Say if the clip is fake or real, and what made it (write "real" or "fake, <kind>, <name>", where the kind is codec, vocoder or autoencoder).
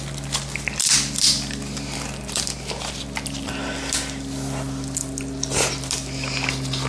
real